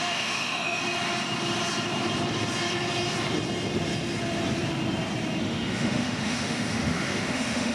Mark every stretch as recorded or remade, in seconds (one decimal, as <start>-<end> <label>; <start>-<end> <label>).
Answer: 0.0-0.8 remade; 0.8-5.4 recorded; 5.4-7.7 remade